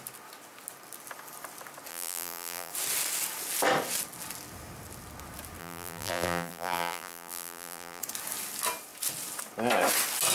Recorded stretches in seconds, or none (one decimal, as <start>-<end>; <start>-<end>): 0.0-1.9; 2.7-5.6; 8.0-10.3